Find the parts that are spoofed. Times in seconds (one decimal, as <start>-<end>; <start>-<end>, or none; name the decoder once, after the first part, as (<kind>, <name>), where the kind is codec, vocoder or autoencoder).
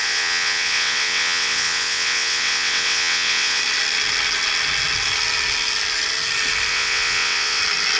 0.0-3.6 (vocoder, WaveNeXt); 6.7-7.6